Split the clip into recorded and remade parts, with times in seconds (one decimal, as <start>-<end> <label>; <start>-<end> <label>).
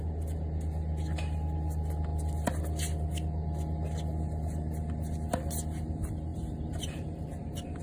0.0-6.3 recorded; 6.3-7.8 remade